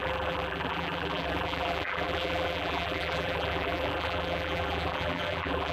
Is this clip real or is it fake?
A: fake